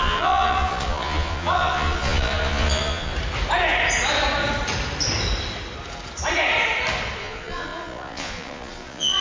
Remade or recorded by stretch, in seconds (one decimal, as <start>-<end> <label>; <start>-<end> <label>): 0.0-3.1 remade; 3.1-7.2 recorded; 7.2-9.2 remade